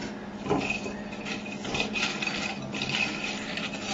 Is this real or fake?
real